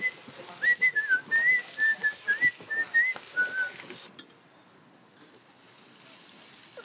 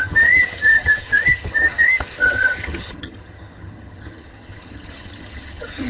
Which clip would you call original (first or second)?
first